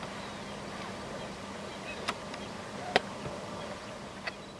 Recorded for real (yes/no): no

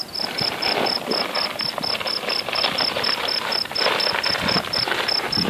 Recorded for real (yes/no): yes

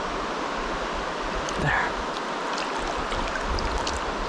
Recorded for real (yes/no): yes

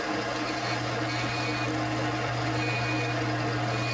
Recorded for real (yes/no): yes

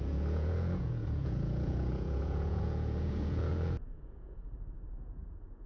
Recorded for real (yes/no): no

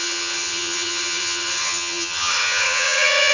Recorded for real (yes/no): no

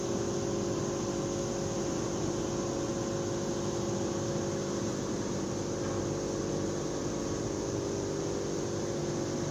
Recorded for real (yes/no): yes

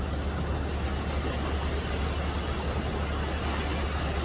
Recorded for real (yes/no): yes